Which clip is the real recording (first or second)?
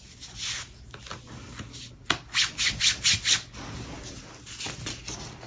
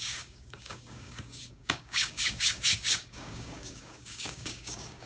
first